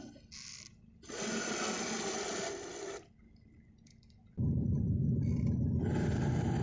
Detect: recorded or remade recorded